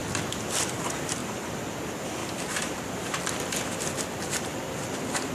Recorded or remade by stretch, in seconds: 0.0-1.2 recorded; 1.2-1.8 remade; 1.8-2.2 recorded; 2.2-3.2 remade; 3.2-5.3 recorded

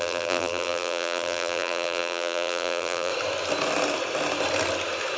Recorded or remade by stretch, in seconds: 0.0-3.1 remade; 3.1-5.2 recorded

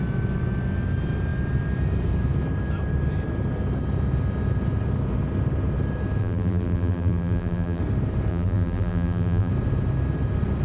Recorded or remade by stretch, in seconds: 0.0-6.2 recorded; 6.2-7.8 remade; 7.8-8.3 recorded; 8.3-9.5 remade; 9.5-10.6 recorded